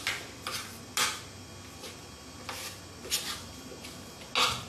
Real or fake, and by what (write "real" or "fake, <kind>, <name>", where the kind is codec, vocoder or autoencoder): real